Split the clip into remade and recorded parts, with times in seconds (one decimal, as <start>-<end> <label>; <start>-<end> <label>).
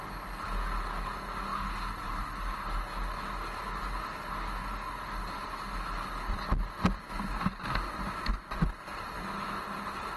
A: 0.0-10.2 recorded